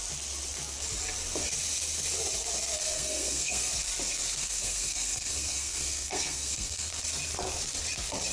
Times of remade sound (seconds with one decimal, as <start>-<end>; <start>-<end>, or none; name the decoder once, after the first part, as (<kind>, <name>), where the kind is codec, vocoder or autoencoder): 2.8-3.7 (codec, SNAC); 4.4-6.9